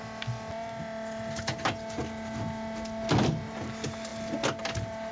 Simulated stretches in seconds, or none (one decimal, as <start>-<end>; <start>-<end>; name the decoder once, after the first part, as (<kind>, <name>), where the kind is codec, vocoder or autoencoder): none